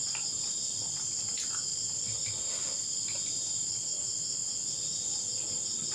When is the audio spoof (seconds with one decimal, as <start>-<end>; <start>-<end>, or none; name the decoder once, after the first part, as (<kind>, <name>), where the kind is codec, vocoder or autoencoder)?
1.7-3.7 (vocoder, BigVGAN v2)